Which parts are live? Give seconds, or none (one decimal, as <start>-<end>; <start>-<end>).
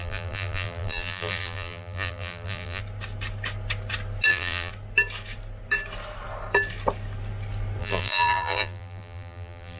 2.8-4.3; 4.7-7.8